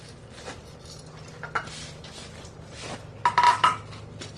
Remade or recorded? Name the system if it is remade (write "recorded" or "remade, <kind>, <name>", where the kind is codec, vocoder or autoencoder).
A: recorded